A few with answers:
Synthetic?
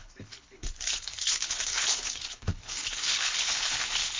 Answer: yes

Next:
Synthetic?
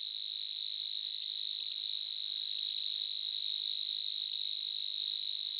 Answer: no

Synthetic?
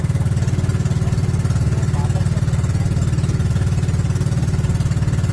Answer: no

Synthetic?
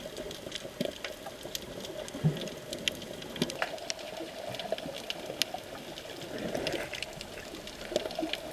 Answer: no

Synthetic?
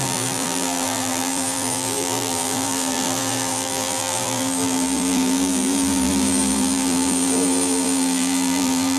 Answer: yes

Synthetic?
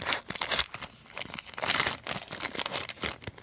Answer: no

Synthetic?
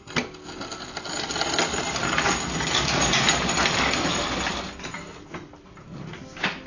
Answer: no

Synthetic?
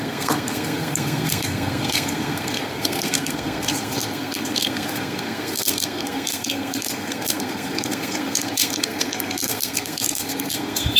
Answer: yes